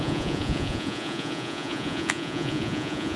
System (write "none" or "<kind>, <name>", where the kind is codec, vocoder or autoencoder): vocoder, Vocos